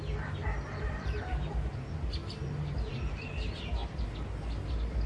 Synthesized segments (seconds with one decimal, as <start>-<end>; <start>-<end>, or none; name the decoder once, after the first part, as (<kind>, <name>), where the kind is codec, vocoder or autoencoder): 0.4-1.5 (vocoder, BigVGAN v2); 2.2-3.3